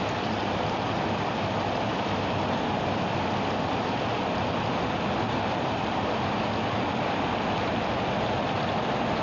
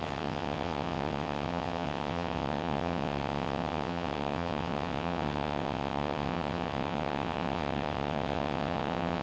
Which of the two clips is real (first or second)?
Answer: first